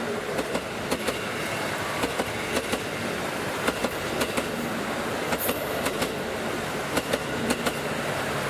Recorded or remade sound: recorded